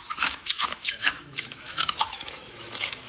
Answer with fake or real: fake